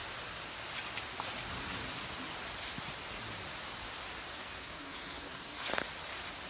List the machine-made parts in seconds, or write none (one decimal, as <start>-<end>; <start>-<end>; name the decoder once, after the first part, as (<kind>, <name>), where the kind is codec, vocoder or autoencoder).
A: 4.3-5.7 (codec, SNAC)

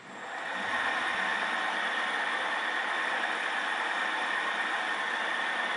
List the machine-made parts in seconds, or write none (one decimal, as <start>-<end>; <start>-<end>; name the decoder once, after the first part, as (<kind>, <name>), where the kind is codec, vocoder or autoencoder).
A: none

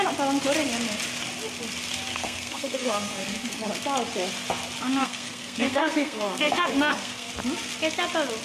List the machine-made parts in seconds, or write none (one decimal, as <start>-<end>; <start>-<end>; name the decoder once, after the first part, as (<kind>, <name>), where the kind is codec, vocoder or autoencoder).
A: 2.1-3.7 (codec, SNAC); 5.0-7.3

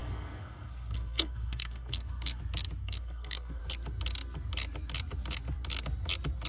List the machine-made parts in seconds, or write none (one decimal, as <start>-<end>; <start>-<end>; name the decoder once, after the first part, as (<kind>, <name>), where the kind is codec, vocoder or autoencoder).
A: 0.0-2.4 (codec, SNAC); 2.8-3.6

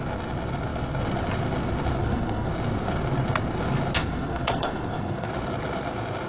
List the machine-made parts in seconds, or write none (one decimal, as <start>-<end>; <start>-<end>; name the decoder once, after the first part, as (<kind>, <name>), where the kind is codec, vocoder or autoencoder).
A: 2.0-2.5 (codec, SNAC); 4.0-5.3

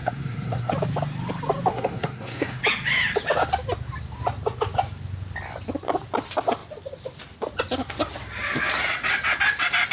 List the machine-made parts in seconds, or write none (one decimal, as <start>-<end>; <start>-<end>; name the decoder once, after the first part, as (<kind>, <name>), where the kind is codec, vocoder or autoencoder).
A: 0.0-0.7 (codec, SNAC); 1.7-2.6

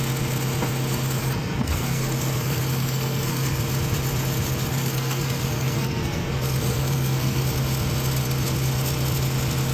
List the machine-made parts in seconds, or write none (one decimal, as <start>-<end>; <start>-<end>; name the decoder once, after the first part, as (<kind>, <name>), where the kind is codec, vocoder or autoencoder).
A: 1.2-3.6 (codec, SNAC); 4.7-7.4